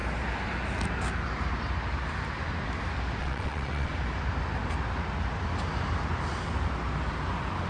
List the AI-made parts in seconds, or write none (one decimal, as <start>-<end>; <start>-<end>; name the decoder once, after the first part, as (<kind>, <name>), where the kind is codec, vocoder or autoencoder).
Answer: 3.2-3.9 (vocoder, WaveNeXt)